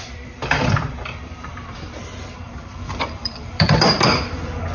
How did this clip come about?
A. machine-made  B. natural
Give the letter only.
A